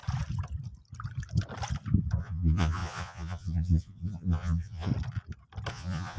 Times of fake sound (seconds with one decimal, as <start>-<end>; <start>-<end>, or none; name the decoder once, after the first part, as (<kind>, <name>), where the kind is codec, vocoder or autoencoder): 2.2-4.9 (vocoder, Vocos); 5.7-6.2